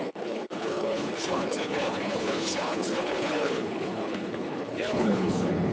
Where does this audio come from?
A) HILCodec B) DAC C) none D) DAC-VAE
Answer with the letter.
A